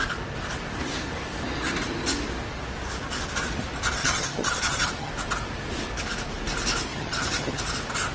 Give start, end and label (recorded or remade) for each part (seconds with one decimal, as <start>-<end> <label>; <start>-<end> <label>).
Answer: 0.0-4.0 recorded; 4.0-5.1 remade; 5.1-6.9 recorded; 6.9-7.6 remade; 7.6-8.1 recorded